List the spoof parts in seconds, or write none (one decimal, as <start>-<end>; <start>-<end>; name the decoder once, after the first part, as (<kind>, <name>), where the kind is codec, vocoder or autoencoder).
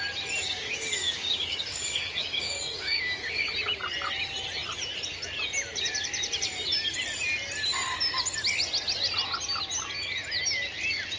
0.4-3.5 (codec, DAC)